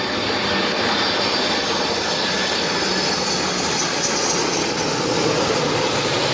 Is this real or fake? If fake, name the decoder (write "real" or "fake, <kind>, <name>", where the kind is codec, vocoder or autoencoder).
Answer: real